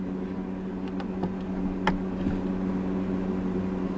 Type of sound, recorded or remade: recorded